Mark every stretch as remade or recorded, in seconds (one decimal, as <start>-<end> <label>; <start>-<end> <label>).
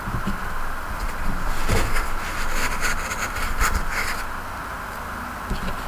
0.0-5.9 recorded